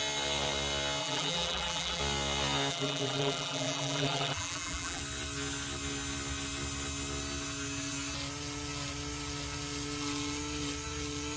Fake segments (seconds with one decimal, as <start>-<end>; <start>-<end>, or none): 1.0-2.0; 2.7-5.0